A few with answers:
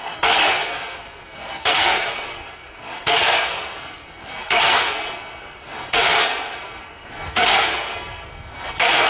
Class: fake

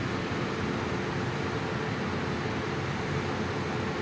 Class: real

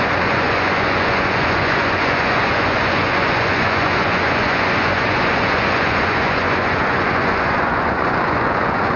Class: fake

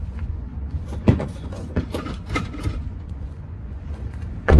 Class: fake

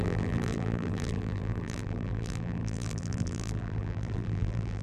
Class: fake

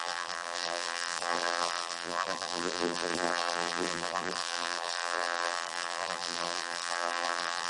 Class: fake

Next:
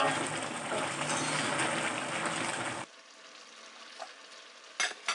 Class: real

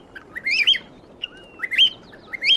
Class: real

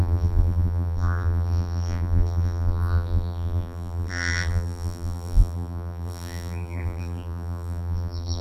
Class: fake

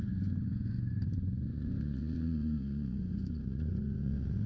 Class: fake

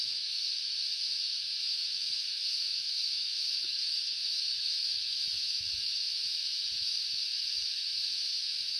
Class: fake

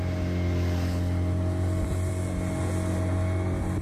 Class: real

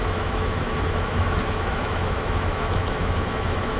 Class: fake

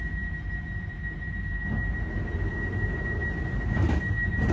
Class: real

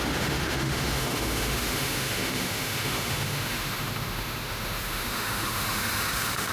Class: fake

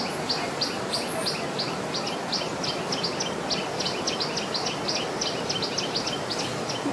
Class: real